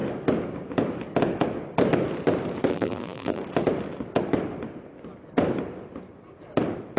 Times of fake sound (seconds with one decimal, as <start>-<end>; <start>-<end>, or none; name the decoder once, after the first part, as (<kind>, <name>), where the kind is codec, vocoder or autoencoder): 2.7-3.4 (vocoder, BigVGAN v2)